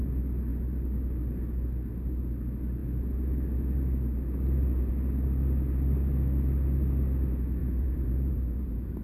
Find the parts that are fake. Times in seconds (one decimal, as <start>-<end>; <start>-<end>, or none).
7.6-9.0